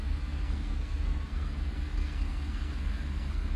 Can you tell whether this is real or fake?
fake